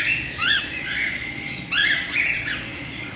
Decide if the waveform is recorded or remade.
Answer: remade